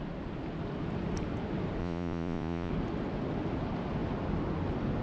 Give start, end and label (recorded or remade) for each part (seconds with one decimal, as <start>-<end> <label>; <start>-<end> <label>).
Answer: 0.0-1.8 recorded; 1.8-2.7 remade; 2.7-5.0 recorded